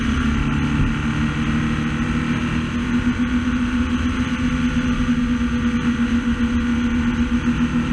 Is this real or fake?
real